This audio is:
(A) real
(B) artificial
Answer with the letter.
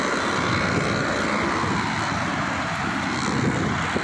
A